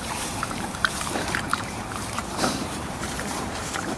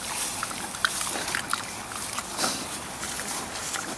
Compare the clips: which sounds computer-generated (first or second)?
first